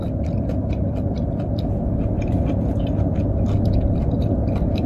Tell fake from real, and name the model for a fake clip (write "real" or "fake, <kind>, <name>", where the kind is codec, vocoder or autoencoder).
real